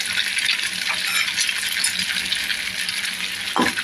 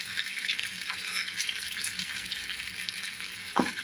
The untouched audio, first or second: first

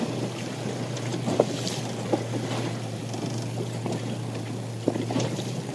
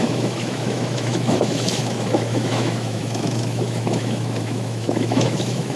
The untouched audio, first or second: first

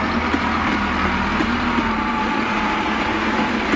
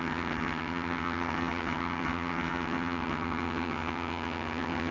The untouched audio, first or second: first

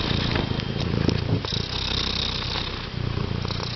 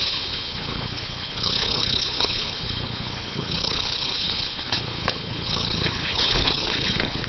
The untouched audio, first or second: first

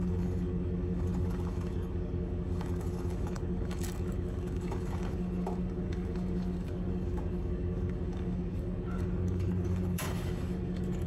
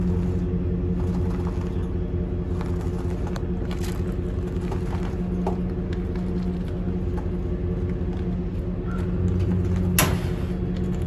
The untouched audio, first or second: second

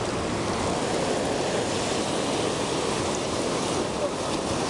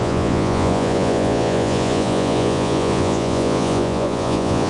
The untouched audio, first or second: first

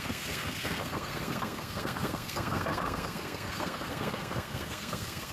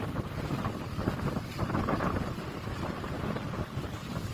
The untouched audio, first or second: second